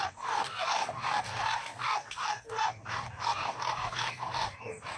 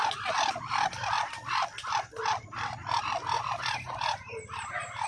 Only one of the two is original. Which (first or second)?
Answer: second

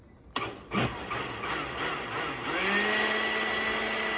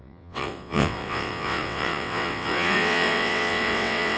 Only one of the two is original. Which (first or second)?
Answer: first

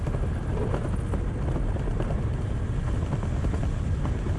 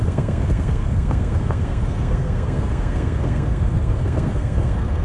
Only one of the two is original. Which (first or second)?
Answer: first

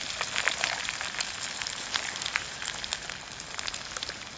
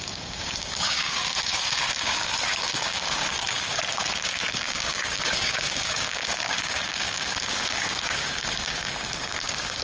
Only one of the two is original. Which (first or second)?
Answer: first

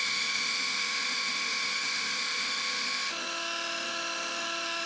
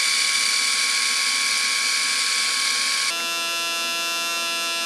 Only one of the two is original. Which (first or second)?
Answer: second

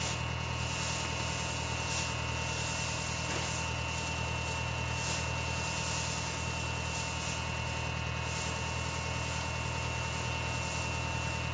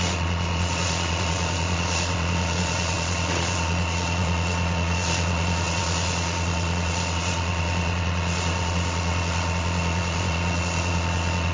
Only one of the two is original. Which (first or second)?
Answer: first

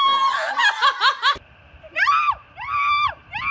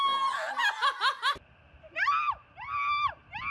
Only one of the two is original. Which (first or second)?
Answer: second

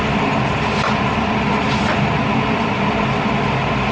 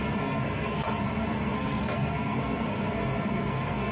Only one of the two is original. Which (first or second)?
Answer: first